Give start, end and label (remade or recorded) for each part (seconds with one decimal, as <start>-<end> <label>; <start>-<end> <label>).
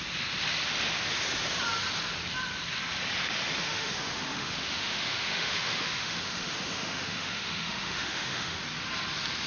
0.0-3.6 recorded; 3.6-8.6 remade; 8.6-9.5 recorded